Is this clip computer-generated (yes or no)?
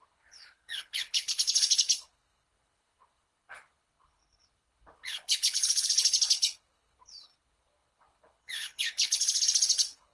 yes